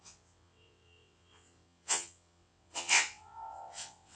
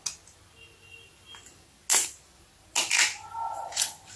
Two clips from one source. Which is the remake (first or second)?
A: first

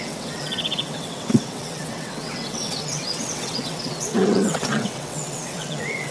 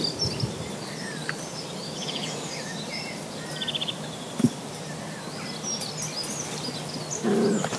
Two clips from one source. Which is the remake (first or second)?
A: first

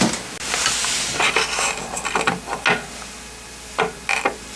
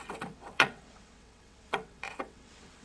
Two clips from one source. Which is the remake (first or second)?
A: second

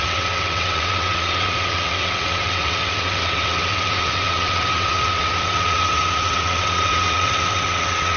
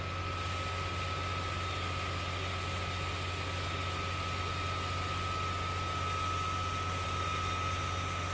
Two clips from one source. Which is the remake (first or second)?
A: first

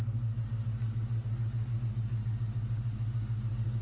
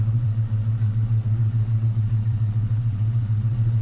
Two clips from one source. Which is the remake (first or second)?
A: second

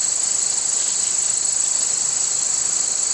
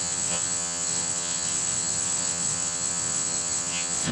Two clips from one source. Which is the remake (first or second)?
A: second